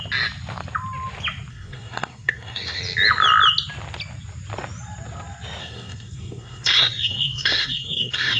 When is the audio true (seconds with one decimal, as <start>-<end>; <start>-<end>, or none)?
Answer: 0.0-1.5; 2.8-5.6